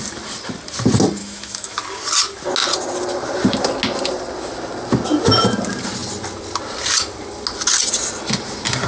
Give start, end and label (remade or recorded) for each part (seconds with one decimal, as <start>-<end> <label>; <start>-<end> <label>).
0.0-1.2 recorded; 1.2-1.8 remade; 1.8-8.9 recorded